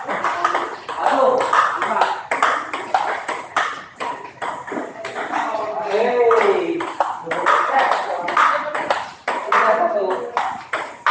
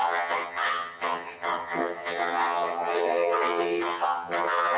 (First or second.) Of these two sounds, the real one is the first